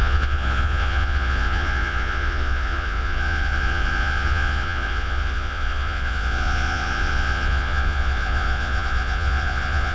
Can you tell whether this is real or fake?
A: fake